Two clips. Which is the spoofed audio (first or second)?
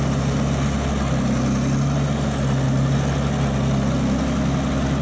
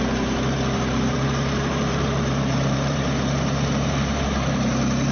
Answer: second